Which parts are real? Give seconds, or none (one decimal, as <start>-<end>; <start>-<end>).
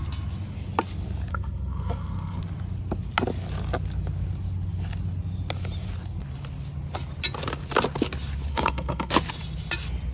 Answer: 0.0-1.3; 2.4-8.5; 9.1-10.1